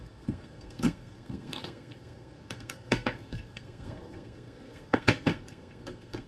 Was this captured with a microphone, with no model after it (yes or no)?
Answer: no